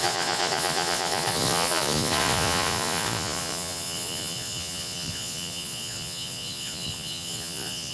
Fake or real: fake